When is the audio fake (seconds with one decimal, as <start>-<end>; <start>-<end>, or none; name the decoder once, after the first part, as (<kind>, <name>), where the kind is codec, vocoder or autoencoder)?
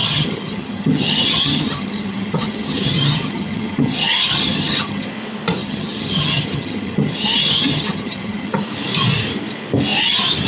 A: 0.0-5.1 (vocoder, HiFi-GAN); 5.6-8.6